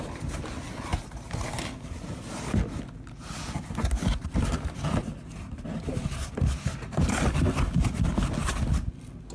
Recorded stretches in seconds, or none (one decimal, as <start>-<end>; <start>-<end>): 0.0-9.3